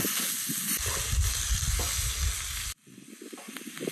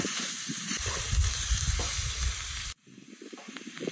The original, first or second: first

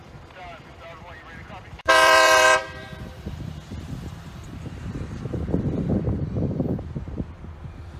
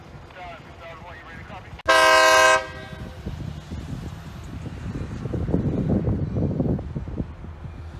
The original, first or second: second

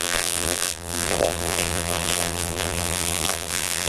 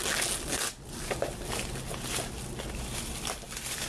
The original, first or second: second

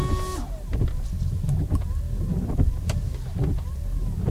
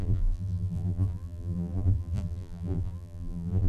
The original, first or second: first